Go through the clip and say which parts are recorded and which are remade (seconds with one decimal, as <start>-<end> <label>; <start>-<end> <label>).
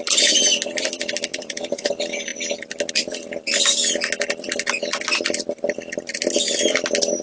0.0-1.3 recorded; 1.3-1.9 remade; 1.9-7.2 recorded